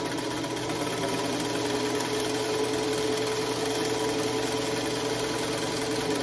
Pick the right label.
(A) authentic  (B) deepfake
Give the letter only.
A